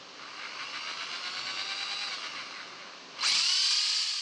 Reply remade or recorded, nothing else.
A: recorded